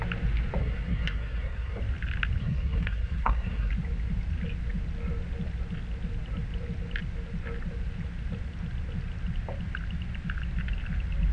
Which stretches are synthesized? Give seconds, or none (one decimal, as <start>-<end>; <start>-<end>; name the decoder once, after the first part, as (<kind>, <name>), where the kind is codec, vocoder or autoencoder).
0.6-1.8 (codec, SNAC); 2.4-3.7